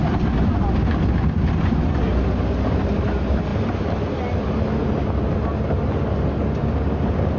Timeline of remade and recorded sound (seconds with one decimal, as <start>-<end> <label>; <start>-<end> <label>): 0.0-7.4 recorded